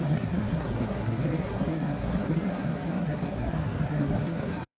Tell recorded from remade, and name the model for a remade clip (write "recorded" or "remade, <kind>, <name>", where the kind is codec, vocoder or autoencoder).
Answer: remade, codec, SNAC